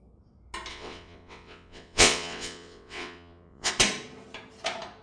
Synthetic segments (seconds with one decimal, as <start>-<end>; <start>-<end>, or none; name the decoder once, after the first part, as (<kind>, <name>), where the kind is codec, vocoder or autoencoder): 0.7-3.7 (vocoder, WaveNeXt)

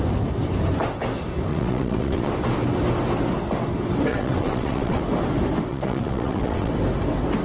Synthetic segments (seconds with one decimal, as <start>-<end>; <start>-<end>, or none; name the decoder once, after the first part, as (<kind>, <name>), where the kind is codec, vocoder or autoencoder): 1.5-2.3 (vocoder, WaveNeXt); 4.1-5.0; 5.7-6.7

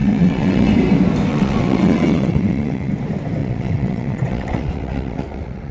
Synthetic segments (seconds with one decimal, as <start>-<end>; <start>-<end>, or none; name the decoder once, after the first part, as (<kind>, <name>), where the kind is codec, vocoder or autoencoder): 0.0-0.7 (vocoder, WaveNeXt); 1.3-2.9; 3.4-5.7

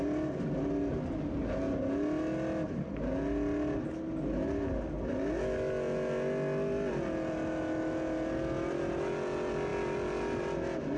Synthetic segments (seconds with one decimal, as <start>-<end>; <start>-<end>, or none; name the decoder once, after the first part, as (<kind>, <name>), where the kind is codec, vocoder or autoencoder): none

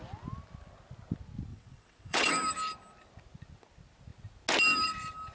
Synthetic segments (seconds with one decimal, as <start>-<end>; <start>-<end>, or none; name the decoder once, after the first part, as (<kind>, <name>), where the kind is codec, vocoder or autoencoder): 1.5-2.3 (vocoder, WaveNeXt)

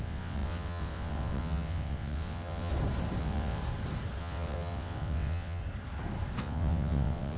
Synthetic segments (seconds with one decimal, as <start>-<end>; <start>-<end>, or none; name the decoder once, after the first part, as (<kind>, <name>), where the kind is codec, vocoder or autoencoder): 0.0-2.7 (vocoder, WaveNeXt); 3.2-3.6; 4.2-5.6; 6.4-7.4